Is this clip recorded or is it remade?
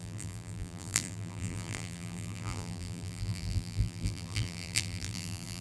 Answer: remade